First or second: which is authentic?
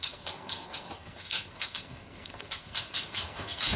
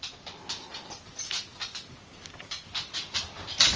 second